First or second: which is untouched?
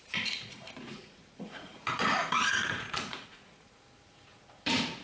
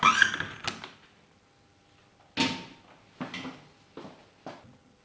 second